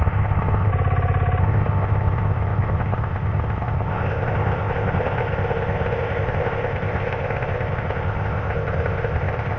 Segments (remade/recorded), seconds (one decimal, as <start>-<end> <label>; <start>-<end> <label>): 0.0-0.7 remade; 0.7-1.4 recorded; 1.4-9.6 remade